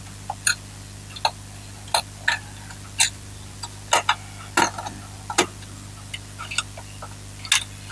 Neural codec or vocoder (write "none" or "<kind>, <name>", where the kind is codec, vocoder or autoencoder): none